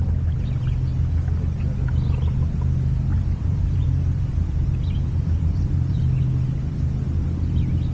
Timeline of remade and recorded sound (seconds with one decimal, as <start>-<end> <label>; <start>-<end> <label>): 0.0-3.1 recorded; 3.1-6.0 remade; 6.0-7.9 recorded